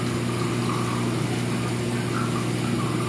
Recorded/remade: recorded